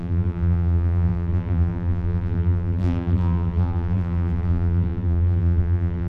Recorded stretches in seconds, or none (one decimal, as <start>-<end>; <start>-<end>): none